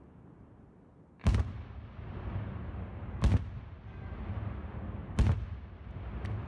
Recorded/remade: recorded